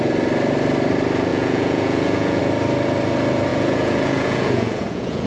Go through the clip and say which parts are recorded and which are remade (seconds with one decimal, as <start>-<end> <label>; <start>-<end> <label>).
0.0-1.3 recorded; 1.3-2.4 remade; 2.4-3.5 recorded; 3.5-5.3 remade